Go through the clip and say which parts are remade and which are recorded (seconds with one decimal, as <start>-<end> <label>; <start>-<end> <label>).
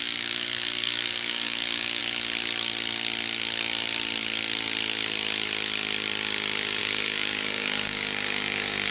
0.0-2.0 remade; 2.0-6.8 recorded; 6.8-8.9 remade